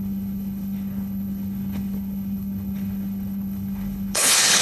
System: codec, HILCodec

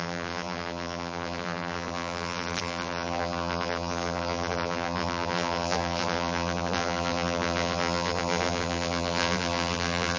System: vocoder, BigVGAN v2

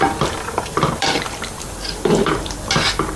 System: vocoder, BigVGAN v2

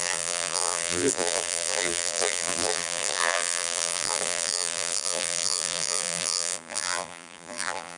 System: vocoder, BigVGAN v2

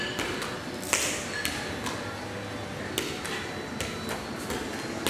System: none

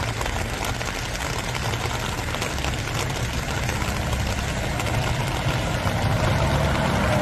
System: none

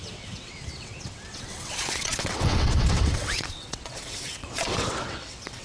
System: vocoder, WaveNeXt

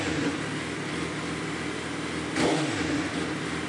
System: none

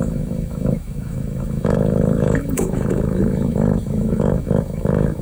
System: autoencoder, DAC-VAE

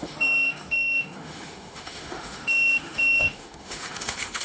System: autoencoder, DAC-VAE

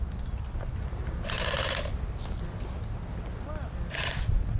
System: none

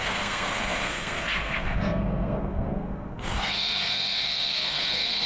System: codec, SNAC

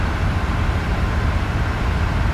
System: none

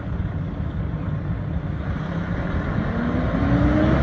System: none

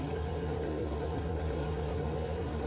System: codec, SNAC